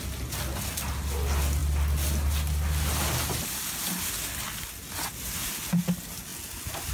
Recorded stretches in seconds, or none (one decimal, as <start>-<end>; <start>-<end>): 0.0-6.9